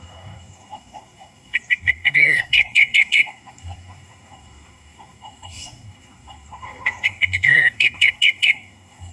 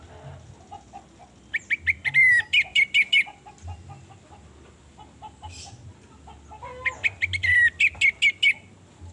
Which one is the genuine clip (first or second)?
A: second